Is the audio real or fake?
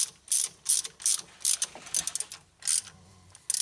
real